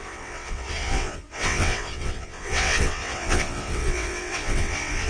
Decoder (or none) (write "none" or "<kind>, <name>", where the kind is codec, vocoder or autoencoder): vocoder, WaveNeXt